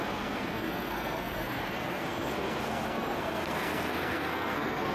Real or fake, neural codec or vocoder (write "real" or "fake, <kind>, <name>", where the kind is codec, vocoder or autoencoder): fake, codec, SNAC